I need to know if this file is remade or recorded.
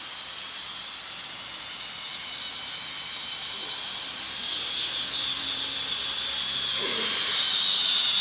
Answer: recorded